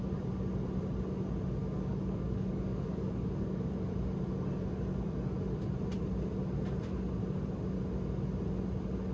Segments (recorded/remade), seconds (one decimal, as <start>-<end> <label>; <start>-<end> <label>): 0.0-1.6 recorded; 1.6-3.7 remade; 3.7-9.1 recorded